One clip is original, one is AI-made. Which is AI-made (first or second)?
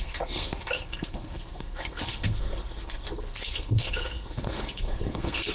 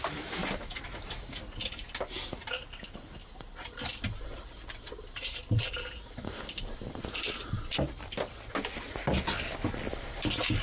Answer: first